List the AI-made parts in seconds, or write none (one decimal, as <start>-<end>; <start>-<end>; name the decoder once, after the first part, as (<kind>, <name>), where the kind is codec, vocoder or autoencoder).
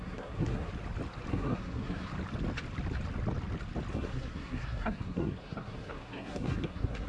0.0-0.7 (codec, SNAC); 1.3-2.1; 3.9-7.1